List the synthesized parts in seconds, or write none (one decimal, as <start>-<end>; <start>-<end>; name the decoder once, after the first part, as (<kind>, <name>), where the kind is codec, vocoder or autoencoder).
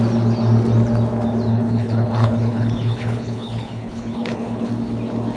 1.5-4.7 (codec, HILCodec)